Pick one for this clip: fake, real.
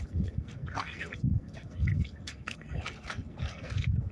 fake